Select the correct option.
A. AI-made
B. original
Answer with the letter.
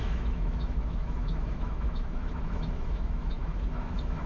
A